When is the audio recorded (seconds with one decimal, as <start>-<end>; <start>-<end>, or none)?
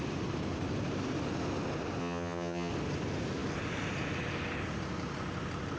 0.0-2.0; 2.7-5.8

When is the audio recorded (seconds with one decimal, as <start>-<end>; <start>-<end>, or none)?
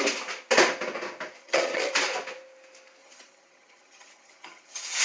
0.0-1.4; 1.9-3.0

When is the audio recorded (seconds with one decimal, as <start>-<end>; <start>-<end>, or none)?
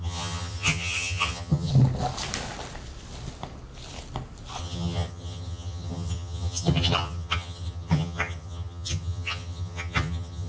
1.7-4.6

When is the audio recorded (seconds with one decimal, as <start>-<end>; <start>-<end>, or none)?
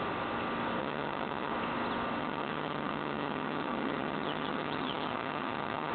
0.0-0.8; 1.5-2.2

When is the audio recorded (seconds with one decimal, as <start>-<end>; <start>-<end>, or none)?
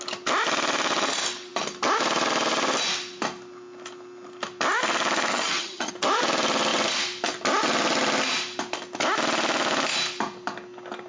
0.0-5.3; 5.9-11.1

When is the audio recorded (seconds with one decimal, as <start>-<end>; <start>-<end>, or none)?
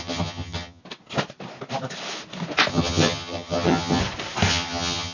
0.8-2.7; 4.0-4.5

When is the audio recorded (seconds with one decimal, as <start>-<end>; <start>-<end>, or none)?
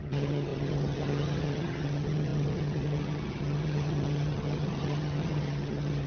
none